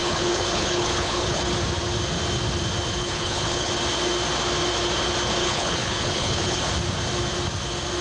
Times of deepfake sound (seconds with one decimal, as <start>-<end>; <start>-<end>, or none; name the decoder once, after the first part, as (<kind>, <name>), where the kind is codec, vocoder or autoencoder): 0.0-1.4 (codec, HILCodec); 3.0-3.7; 5.4-6.6